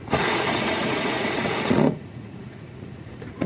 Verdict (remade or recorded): remade